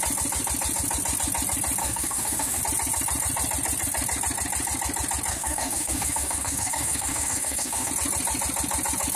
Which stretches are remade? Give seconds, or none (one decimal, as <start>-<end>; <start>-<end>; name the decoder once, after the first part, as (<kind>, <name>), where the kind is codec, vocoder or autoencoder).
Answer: 1.8-2.6 (codec, DAC); 5.3-7.9